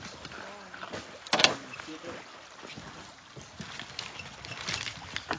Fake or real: real